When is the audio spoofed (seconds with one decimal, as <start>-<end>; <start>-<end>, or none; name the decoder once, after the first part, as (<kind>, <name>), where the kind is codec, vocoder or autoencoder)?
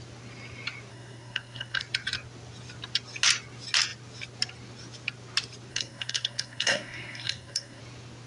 0.9-1.8 (codec, SNAC); 5.7-7.8